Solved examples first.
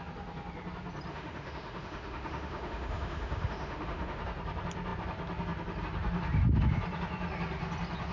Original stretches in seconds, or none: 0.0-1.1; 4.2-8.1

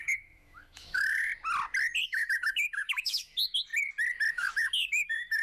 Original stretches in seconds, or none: 1.3-2.0; 3.7-4.3